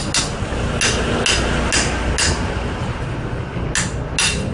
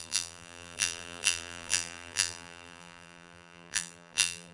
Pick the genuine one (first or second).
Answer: first